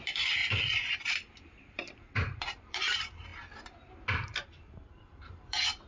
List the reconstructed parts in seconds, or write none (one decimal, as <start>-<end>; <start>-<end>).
0.0-0.4; 0.9-3.3; 5.0-5.9